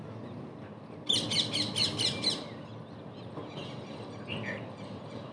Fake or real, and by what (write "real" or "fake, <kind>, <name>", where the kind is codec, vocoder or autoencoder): real